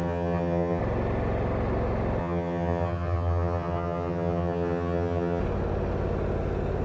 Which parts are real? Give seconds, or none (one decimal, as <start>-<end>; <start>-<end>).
0.8-2.2; 5.4-6.8